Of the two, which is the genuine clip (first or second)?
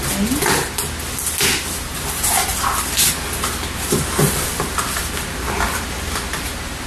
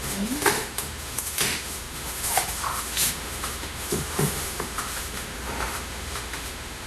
first